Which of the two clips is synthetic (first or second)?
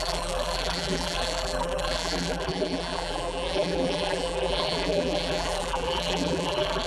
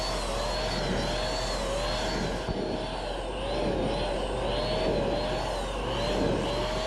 first